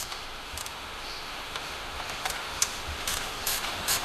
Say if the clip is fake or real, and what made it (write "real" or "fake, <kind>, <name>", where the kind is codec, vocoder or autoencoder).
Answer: fake, autoencoder, DAC-VAE